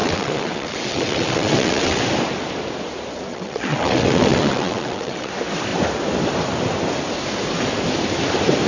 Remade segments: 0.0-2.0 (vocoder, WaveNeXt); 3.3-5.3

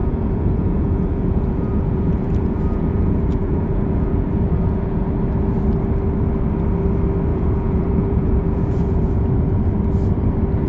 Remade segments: 0.0-5.1 (vocoder, Vocos); 7.3-9.6

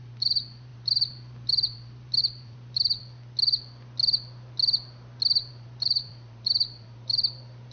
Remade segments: 0.0-3.0 (vocoder, BigVGAN v2); 5.5-7.7

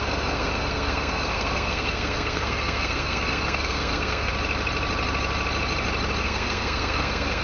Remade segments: 0.0-4.3 (codec, SNAC); 6.2-7.4